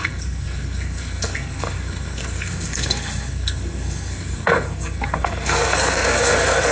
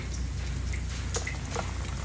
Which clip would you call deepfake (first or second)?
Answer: first